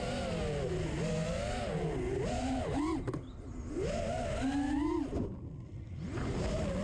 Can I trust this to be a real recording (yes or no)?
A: yes